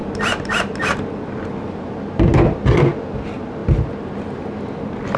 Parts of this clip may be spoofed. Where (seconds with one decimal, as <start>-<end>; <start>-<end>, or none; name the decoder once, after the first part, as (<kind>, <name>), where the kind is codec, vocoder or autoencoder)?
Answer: none

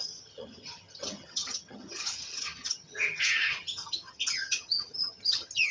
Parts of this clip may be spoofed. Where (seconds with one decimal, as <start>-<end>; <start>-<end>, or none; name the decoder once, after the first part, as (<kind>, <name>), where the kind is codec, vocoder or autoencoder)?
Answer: 0.0-5.7 (vocoder, HiFi-GAN)

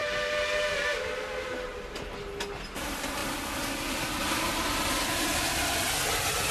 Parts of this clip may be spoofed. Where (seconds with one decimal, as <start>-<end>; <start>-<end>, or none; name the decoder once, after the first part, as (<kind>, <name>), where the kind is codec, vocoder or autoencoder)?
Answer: none

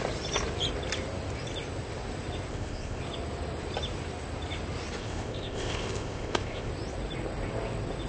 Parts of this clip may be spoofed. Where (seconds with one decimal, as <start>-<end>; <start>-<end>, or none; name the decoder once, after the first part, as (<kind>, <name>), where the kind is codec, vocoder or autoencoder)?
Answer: 2.5-3.0 (codec, ZipCodec); 5.0-6.7

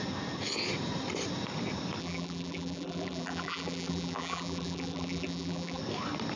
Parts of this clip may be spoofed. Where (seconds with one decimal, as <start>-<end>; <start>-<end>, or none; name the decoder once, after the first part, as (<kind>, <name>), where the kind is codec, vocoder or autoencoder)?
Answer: 2.0-5.8 (vocoder, BigVGAN v2)

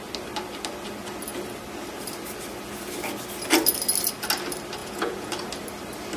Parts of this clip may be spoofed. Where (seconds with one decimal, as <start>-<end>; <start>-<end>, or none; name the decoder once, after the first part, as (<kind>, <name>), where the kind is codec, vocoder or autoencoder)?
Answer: 4.8-5.3 (vocoder, Vocos)

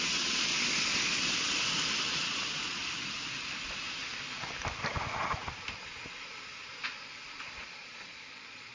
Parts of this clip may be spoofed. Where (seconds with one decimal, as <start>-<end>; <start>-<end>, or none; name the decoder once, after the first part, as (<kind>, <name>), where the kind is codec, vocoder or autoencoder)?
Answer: 0.0-0.5 (vocoder, Vocos); 2.1-2.9; 7.4-8.7